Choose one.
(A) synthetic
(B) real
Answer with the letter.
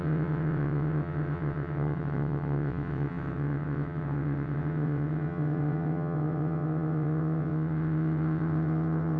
A